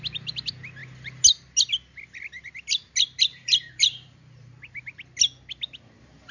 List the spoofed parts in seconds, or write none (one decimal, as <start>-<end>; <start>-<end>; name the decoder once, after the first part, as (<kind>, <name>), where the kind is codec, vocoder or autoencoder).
3.3-4.8 (vocoder, BigVGAN v2)